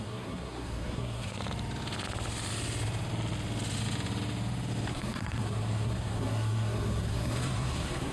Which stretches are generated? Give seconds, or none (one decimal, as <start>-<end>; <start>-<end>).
0.0-1.4; 4.9-8.1